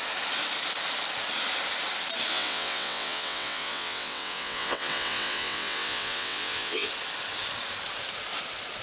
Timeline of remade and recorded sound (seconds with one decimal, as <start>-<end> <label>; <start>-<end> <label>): 0.0-2.3 recorded; 2.3-6.9 remade; 6.9-8.8 recorded